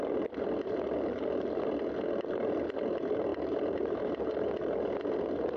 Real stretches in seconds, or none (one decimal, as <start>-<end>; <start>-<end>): 0.0-3.3; 4.1-5.6